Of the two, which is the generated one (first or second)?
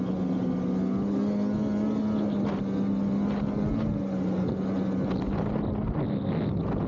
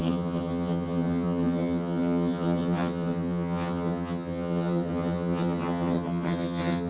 second